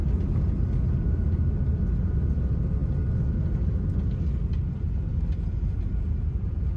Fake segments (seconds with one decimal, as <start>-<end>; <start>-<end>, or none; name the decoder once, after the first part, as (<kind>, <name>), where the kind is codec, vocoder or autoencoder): none